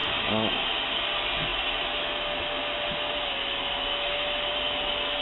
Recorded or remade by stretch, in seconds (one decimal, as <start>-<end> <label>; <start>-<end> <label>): 0.0-5.2 recorded